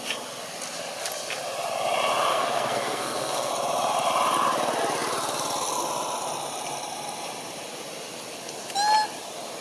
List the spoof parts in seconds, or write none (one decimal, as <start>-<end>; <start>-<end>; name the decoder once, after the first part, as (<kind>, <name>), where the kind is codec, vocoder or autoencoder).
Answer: 2.3-3.5 (codec, SNAC)